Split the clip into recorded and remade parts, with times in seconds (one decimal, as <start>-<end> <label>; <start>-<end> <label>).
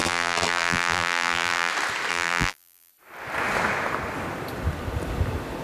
0.0-1.7 remade; 1.7-2.1 recorded; 2.1-2.9 remade; 2.9-5.6 recorded